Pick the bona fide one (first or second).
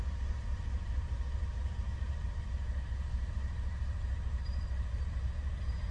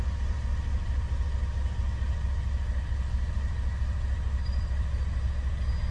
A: second